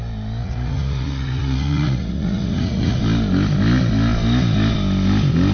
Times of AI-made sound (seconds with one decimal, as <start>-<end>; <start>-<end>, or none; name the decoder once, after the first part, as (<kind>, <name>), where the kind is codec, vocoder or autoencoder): 0.4-3.0 (vocoder, Vocos)